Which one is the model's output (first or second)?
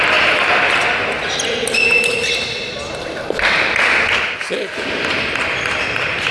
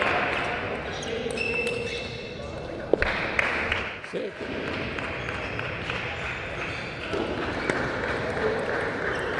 first